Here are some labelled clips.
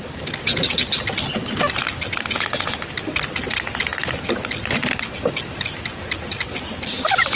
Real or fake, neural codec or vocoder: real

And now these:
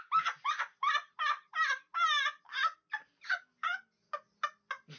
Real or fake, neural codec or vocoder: real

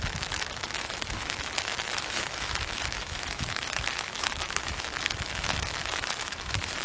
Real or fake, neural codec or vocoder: fake, autoencoder, DAC-VAE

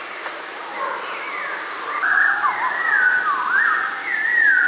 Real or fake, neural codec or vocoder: real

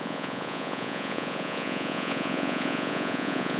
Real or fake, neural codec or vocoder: fake, vocoder, Vocos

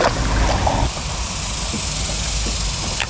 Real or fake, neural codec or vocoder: real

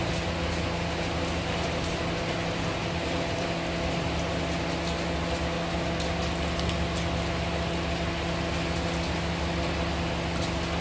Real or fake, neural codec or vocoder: real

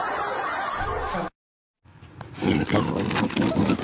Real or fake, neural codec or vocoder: real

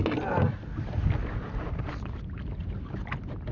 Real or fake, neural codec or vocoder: real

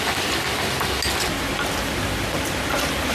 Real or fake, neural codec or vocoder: real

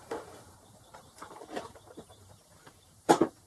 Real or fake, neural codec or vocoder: fake, vocoder, BigVGAN v2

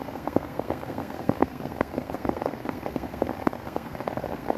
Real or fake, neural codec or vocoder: fake, codec, SNAC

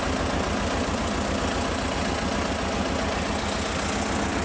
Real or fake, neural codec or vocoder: real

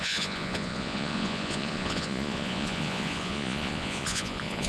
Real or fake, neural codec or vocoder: fake, vocoder, Vocos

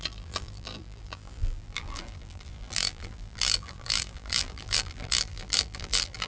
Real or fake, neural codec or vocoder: fake, vocoder, BigVGAN v2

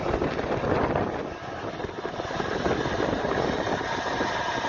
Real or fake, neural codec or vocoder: real